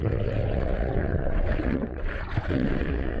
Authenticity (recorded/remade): remade